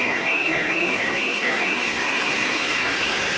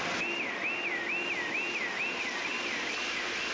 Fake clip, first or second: first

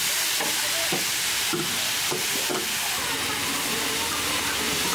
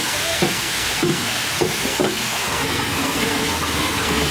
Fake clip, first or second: second